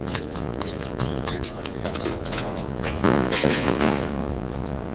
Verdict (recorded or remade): remade